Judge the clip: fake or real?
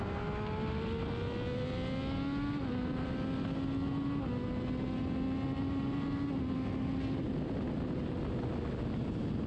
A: real